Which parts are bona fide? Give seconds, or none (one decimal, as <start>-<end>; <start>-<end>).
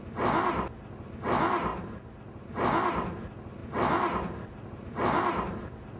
0.0-1.7; 2.5-3.6